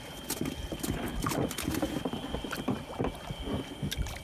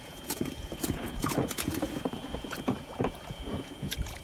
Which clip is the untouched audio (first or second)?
first